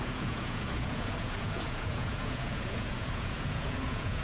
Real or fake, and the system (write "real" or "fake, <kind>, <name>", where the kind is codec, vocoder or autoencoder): fake, vocoder, Vocos